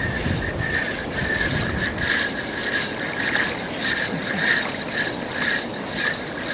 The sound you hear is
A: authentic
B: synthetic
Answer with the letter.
A